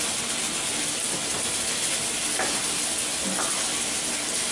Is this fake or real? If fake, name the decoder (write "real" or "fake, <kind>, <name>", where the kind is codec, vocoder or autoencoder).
real